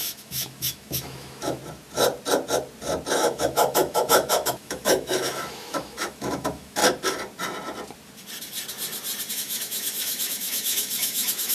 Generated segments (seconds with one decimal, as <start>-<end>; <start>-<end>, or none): 0.0-1.6; 3.1-6.8; 9.3-11.5